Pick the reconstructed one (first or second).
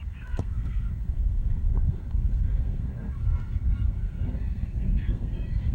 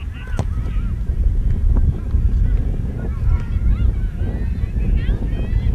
first